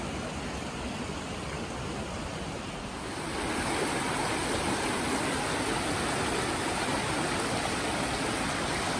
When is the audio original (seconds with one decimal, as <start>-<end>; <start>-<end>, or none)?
0.0-9.0